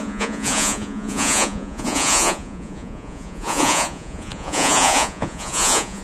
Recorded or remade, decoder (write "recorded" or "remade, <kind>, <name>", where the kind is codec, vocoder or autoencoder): remade, vocoder, Vocos